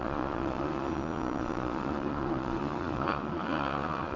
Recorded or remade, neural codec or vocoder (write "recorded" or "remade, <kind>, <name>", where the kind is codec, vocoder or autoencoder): remade, vocoder, Vocos